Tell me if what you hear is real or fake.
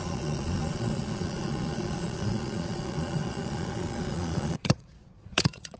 fake